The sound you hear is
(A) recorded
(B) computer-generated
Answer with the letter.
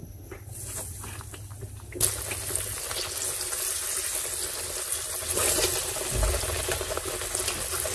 A